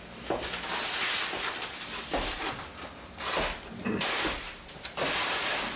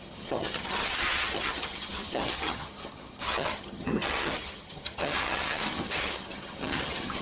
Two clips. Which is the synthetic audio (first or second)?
second